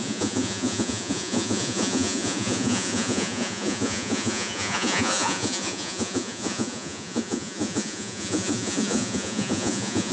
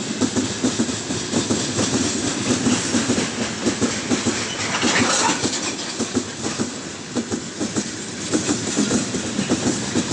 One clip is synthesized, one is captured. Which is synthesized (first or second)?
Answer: first